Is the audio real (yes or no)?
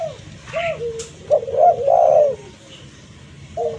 no